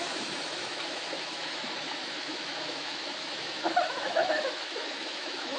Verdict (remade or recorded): remade